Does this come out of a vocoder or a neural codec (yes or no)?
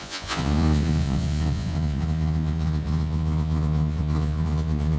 yes